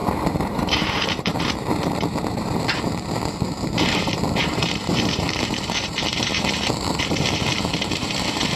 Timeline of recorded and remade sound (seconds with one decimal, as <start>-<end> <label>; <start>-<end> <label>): 0.0-8.6 remade